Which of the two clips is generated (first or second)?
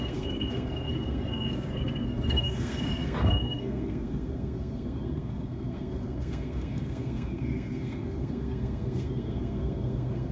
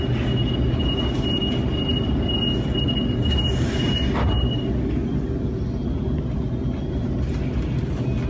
first